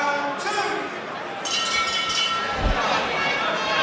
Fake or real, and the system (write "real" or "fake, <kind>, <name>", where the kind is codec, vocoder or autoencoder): real